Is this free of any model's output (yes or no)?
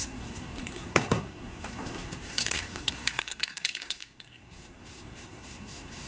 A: no